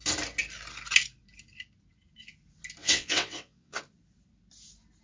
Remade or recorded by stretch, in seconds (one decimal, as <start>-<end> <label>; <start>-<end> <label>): 0.0-2.8 recorded; 2.8-3.8 remade; 3.8-5.0 recorded